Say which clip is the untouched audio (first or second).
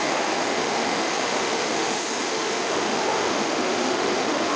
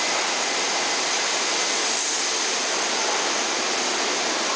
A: second